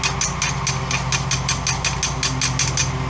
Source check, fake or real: real